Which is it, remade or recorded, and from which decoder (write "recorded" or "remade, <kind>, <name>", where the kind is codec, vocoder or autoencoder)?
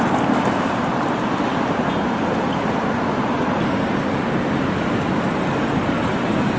recorded